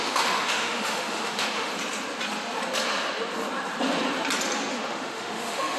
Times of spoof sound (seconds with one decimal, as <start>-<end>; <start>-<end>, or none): 0.0-1.7; 4.7-5.8